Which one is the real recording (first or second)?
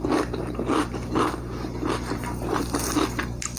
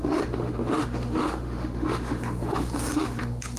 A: first